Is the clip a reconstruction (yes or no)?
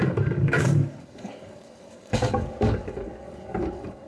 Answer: yes